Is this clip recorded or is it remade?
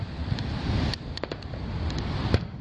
recorded